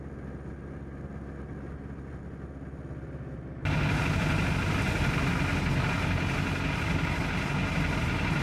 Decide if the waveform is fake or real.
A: real